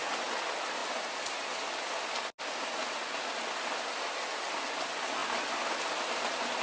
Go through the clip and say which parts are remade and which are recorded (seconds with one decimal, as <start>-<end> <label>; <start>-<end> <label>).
0.0-6.6 recorded